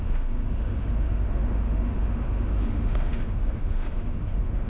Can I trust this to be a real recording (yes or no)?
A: no